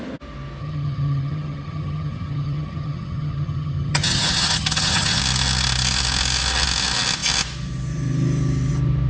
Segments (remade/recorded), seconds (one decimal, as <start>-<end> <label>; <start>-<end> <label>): 0.0-0.6 recorded; 0.6-5.2 remade; 5.2-9.1 recorded